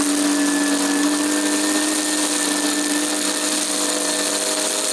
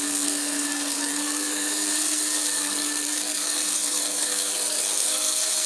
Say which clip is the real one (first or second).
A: first